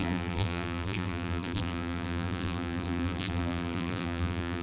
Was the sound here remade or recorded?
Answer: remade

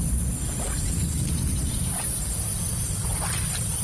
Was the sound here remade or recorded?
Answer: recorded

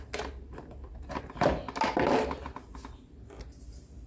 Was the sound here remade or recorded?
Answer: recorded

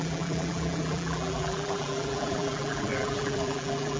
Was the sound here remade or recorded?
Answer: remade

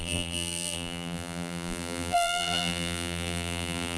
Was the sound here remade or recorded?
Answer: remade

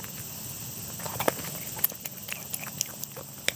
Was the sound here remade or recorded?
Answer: recorded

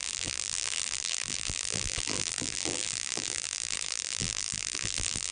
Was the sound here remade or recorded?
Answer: remade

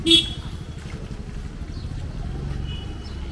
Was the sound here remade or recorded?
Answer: recorded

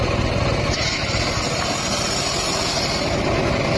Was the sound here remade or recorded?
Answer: recorded